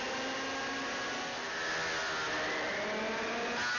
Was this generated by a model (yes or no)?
no